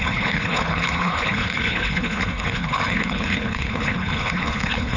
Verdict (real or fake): fake